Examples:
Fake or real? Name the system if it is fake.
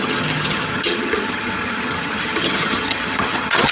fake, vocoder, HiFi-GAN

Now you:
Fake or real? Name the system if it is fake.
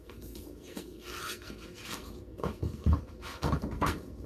fake, codec, SNAC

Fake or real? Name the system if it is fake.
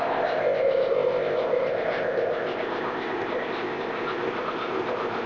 fake, codec, ZipCodec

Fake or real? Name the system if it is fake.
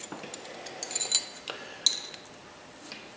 real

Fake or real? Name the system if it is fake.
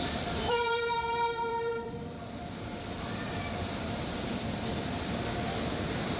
fake, vocoder, BigVGAN v2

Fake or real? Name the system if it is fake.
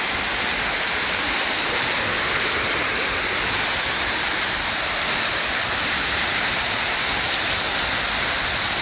real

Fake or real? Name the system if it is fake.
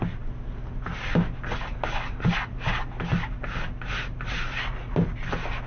real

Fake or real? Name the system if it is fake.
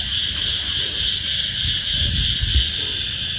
real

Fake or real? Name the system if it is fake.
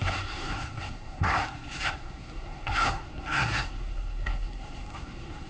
fake, codec, SNAC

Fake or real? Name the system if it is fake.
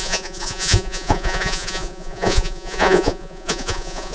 fake, vocoder, Vocos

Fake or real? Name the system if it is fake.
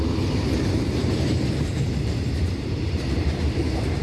fake, vocoder, BigVGAN v2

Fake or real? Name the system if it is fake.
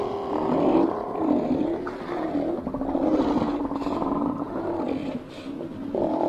real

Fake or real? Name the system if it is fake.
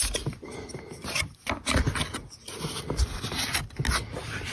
real